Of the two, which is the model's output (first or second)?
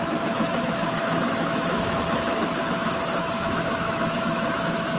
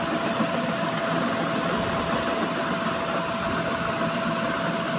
first